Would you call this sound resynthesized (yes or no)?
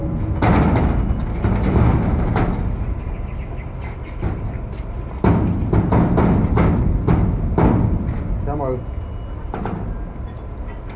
no